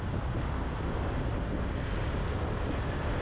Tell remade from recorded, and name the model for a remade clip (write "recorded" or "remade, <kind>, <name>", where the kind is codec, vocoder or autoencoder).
recorded